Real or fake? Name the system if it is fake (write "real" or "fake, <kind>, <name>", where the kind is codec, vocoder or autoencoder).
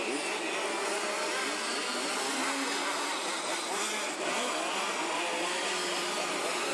real